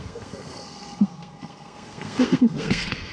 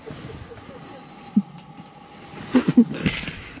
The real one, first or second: second